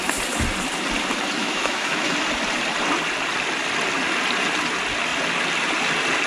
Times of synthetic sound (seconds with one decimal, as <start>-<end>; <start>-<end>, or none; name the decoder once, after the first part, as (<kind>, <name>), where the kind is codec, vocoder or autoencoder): 1.4-2.1 (autoencoder, DAC-VAE)